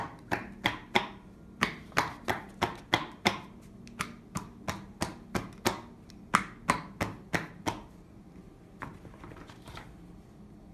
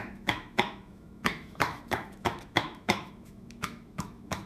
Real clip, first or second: first